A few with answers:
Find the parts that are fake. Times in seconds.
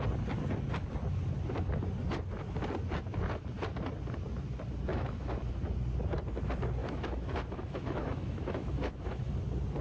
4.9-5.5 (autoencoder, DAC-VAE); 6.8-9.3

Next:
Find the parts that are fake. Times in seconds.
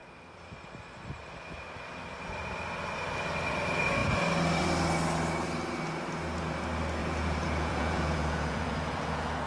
7.0-9.5 (vocoder, Vocos)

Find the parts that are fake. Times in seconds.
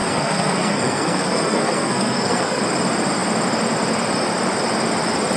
0.0-2.6 (codec, SNAC)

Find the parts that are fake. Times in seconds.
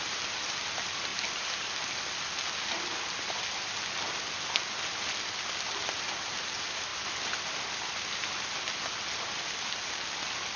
1.1-1.7 (vocoder, BigVGAN v2)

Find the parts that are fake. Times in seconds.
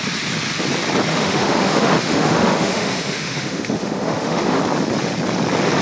1.1-4.6 (autoencoder, DAC-VAE)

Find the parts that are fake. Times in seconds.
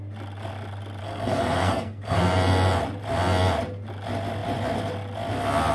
1.0-2.2 (codec, SNAC)